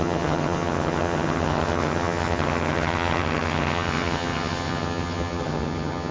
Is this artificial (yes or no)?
yes